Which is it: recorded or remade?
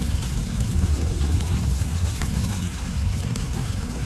remade